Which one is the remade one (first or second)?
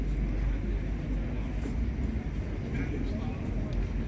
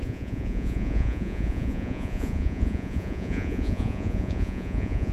second